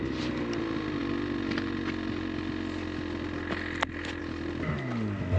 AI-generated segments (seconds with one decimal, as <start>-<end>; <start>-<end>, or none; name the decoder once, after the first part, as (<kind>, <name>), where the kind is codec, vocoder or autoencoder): none